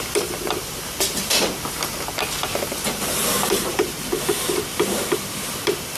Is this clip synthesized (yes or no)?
yes